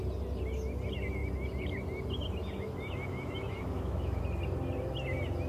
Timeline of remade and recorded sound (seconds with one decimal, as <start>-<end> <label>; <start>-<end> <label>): 0.0-2.4 recorded; 2.4-4.2 remade; 4.2-5.5 recorded